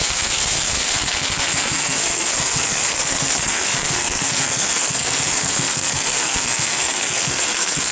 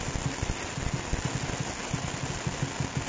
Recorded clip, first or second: second